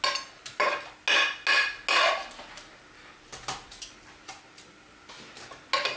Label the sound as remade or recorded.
recorded